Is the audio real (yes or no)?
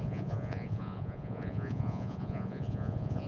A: no